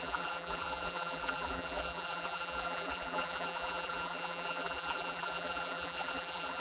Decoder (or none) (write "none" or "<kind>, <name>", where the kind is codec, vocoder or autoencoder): vocoder, BigVGAN v2